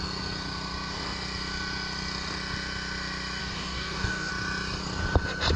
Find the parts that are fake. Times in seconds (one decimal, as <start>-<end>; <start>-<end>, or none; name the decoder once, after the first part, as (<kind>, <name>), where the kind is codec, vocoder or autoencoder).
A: 3.4-4.3 (codec, DAC)

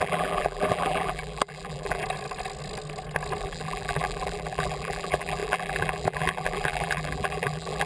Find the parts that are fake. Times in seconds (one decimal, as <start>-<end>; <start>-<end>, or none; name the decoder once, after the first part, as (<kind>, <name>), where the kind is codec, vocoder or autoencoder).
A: 0.0-2.0 (vocoder, BigVGAN v2); 3.4-7.9

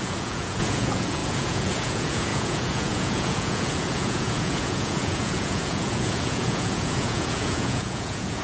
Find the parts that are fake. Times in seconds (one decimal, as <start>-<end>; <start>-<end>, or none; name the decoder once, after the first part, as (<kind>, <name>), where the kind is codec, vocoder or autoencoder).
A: 0.0-8.4 (vocoder, Vocos)

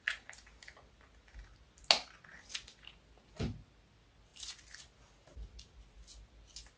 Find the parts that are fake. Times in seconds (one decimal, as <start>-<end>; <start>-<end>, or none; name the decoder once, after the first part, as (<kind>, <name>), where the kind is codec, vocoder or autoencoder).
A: none

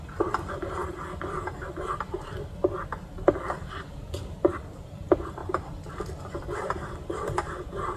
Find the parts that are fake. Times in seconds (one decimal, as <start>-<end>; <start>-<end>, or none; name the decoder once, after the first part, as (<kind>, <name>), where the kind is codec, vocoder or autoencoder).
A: 0.0-0.8 (vocoder, BigVGAN v2); 3.4-5.4; 5.9-8.0

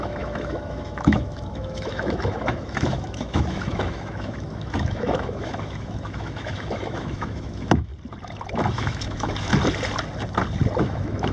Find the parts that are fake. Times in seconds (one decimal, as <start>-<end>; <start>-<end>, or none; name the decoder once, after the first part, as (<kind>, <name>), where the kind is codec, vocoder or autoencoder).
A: 0.0-7.9 (autoencoder, DAC-VAE); 8.7-9.5; 10.8-11.3

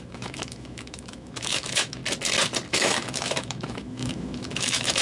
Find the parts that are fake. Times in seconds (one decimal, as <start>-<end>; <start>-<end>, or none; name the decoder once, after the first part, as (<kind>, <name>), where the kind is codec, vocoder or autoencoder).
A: 0.0-2.0 (autoencoder, DAC-VAE); 2.7-5.0